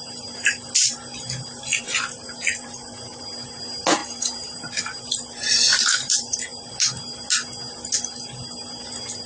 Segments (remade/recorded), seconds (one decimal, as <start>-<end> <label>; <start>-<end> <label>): 0.0-1.7 recorded; 1.7-3.2 remade; 3.2-4.0 recorded; 4.0-6.7 remade; 6.7-9.3 recorded